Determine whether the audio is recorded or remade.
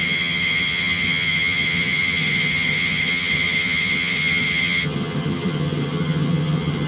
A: remade